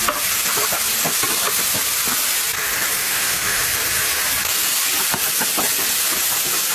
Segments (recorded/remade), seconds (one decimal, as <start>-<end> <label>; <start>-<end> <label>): 0.0-3.0 recorded; 3.0-3.6 remade; 3.6-6.7 recorded